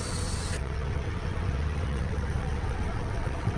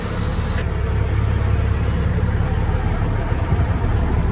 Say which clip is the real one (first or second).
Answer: second